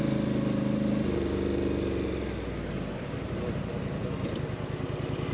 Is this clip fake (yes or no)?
no